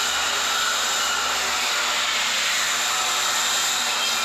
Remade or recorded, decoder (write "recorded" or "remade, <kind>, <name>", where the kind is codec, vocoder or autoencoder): recorded